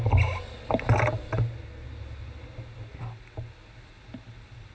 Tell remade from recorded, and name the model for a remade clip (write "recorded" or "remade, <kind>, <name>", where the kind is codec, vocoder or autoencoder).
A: recorded